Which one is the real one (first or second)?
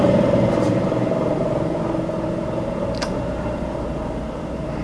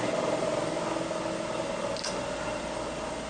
second